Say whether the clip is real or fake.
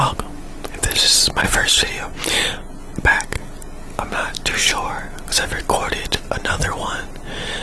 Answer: real